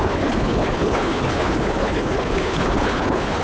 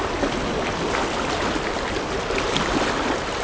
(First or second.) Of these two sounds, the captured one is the second